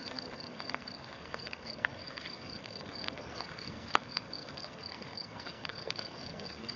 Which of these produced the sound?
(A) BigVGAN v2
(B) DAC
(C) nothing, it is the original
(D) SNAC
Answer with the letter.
D